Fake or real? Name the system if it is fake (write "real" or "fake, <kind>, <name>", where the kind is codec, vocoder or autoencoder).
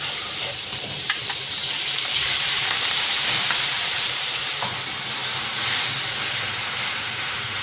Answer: fake, vocoder, BigVGAN v2